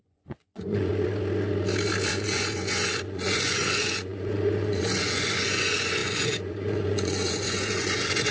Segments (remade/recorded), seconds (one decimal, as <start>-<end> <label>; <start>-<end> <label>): 0.0-0.9 remade; 0.9-2.1 recorded; 2.1-8.3 remade